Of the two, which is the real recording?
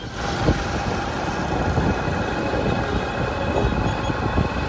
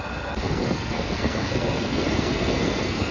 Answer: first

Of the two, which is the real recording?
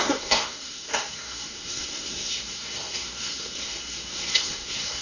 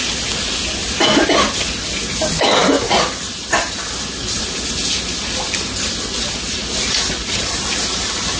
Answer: second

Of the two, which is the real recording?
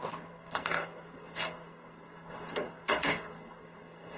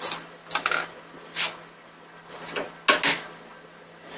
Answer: second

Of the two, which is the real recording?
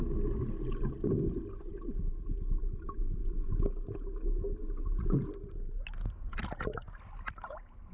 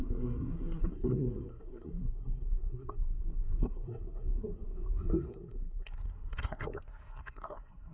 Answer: first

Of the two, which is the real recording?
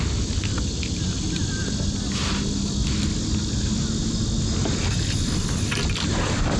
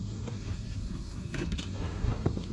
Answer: first